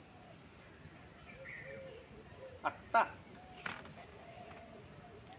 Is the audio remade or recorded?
recorded